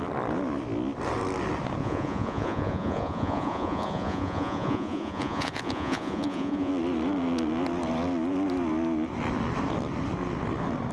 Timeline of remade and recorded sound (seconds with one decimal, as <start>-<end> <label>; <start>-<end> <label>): 0.0-1.8 recorded; 1.8-6.7 remade; 6.7-10.9 recorded